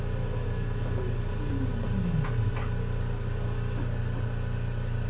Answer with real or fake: real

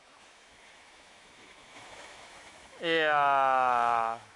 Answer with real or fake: fake